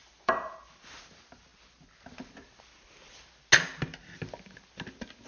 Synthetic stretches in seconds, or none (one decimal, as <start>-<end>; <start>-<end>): 0.0-0.5